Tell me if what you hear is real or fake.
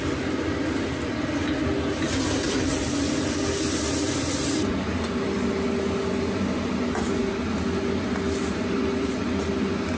real